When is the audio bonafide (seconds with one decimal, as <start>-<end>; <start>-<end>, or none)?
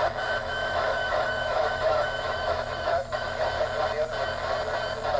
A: 0.0-0.4; 3.5-5.2